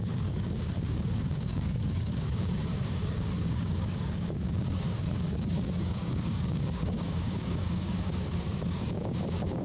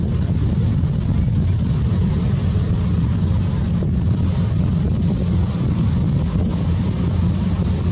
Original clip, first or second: second